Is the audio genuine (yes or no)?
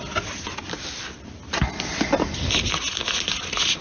yes